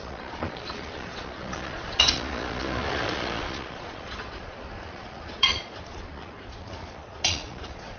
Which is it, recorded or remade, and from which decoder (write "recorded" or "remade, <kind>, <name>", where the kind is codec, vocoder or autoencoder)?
remade, vocoder, Vocos